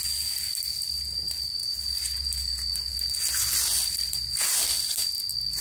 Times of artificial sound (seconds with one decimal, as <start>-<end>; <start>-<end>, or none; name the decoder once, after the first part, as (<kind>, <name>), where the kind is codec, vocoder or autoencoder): none